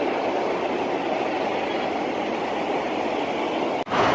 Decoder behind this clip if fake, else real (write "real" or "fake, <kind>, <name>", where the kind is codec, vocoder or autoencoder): real